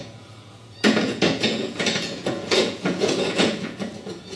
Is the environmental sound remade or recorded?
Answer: remade